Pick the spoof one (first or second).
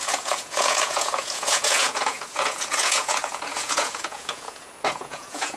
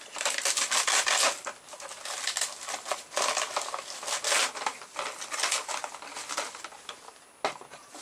first